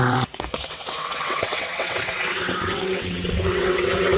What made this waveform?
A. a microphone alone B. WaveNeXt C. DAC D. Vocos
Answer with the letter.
B